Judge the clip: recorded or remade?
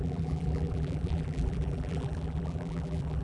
remade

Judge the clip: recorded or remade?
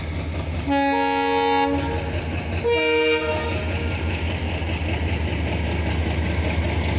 recorded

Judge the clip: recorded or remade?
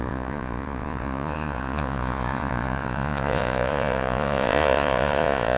remade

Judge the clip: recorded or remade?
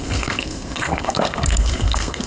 remade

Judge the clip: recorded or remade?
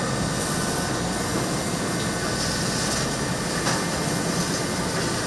recorded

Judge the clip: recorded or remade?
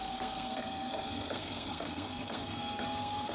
remade